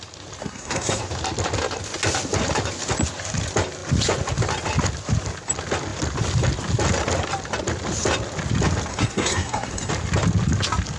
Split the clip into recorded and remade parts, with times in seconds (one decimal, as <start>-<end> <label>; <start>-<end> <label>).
0.0-0.4 recorded; 0.4-1.0 remade; 1.0-8.9 recorded; 8.9-9.9 remade; 9.9-11.0 recorded